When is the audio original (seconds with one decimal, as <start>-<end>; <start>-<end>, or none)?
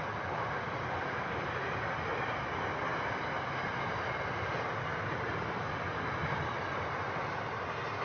0.0-4.9; 5.7-8.0